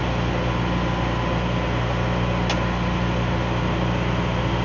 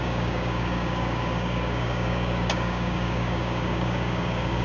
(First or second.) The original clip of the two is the first